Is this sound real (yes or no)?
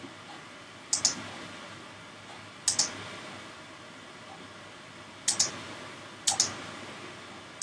yes